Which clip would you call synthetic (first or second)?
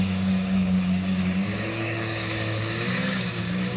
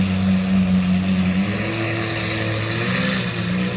first